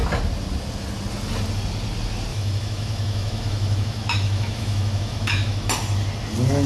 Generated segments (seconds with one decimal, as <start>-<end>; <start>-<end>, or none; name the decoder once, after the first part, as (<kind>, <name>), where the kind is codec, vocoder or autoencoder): 2.3-5.7 (autoencoder, DAC-VAE)